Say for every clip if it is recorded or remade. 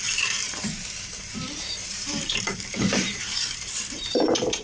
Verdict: remade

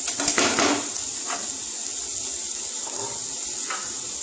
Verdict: recorded